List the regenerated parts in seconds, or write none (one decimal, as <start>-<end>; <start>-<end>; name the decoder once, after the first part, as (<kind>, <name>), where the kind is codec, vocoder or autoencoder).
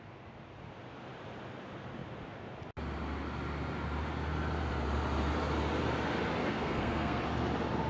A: 6.4-7.2 (codec, SNAC)